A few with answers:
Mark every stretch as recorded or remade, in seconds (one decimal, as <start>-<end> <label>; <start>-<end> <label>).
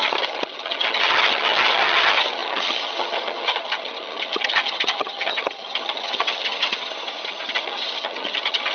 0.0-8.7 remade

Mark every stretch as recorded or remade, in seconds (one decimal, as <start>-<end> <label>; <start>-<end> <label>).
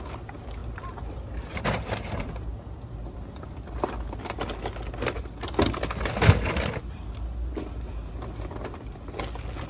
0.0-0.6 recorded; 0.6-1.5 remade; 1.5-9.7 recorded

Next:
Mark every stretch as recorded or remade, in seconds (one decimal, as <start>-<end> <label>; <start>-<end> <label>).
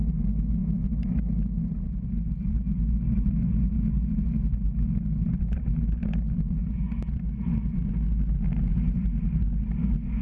0.0-10.2 recorded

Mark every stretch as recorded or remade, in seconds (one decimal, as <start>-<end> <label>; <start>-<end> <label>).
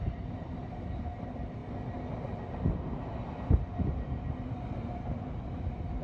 0.0-1.6 remade; 1.6-5.2 recorded; 5.2-6.0 remade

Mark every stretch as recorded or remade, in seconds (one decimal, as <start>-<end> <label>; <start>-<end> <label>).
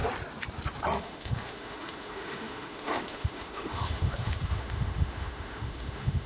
0.0-1.0 recorded; 1.0-6.3 remade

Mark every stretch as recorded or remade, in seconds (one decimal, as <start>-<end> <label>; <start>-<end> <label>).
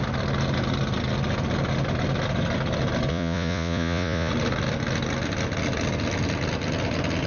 0.0-3.1 recorded; 3.1-4.3 remade; 4.3-7.3 recorded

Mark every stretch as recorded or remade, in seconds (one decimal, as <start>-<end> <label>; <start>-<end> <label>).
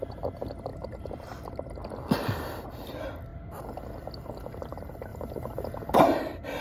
0.0-0.7 recorded; 0.7-1.6 remade; 1.6-6.6 recorded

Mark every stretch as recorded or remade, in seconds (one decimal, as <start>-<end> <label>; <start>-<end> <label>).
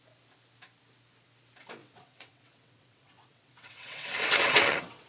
0.0-1.8 recorded; 1.8-5.1 remade